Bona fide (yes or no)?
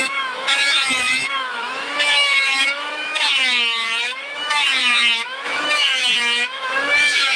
no